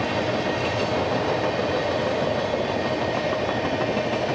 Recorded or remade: recorded